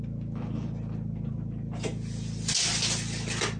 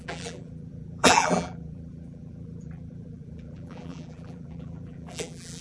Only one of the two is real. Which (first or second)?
first